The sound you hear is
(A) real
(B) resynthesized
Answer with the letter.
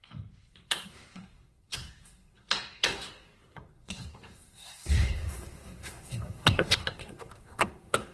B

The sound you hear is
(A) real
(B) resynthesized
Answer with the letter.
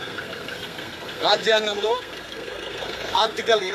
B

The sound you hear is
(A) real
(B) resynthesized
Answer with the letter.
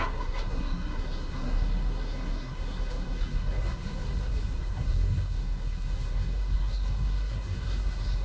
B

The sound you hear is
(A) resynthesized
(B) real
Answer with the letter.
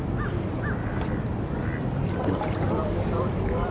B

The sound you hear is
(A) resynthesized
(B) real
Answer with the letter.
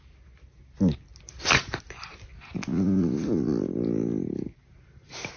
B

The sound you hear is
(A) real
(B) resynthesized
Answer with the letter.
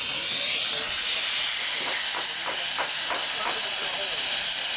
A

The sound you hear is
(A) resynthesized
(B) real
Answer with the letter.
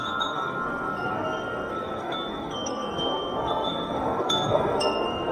A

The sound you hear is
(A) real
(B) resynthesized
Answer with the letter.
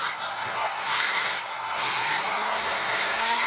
B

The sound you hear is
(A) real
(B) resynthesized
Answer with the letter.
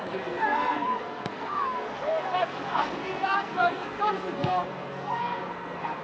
B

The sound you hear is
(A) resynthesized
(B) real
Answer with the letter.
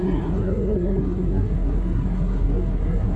A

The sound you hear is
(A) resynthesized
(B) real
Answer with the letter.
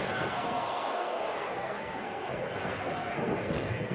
A